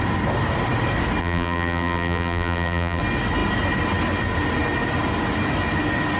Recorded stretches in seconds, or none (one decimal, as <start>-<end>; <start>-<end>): 0.0-1.2; 3.0-6.2